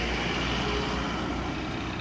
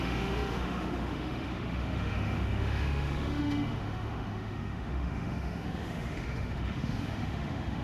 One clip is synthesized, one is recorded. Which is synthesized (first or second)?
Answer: second